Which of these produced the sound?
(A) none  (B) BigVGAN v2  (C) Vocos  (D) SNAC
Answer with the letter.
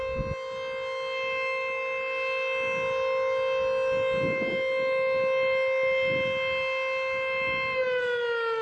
A